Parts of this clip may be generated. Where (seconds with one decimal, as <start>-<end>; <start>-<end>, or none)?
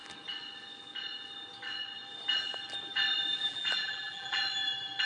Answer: 3.4-4.4